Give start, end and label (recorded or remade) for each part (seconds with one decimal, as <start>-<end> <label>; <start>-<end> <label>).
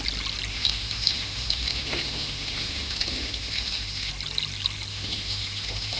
0.0-0.5 recorded; 0.5-4.1 remade; 4.1-4.9 recorded; 4.9-6.0 remade